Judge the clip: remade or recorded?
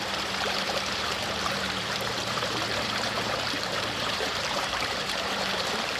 remade